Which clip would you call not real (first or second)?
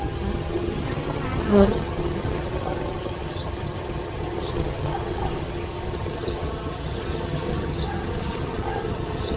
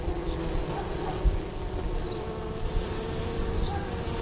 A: first